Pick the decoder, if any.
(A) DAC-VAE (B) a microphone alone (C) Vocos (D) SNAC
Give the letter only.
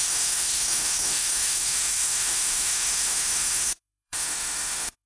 A